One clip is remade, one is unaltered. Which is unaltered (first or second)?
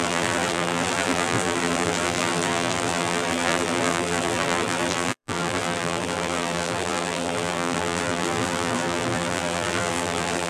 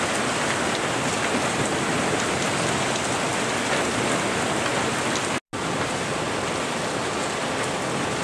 second